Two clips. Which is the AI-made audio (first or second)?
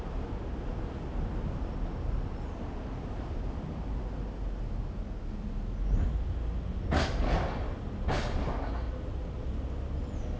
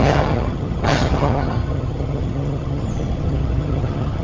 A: second